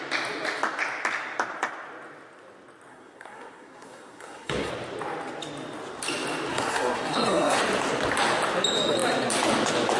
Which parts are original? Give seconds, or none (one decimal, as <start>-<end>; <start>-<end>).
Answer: 0.0-2.9; 4.7-6.5; 7.6-10.0